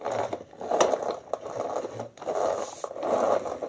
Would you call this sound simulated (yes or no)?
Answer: no